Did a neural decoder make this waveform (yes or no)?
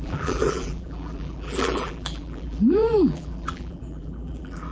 yes